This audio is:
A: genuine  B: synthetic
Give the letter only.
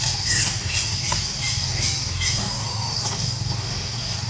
B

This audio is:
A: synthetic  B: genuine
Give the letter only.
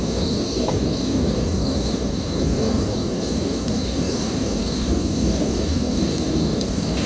A